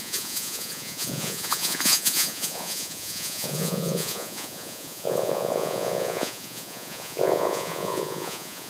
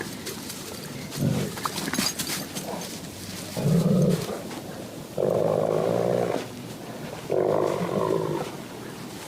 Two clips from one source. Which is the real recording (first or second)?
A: second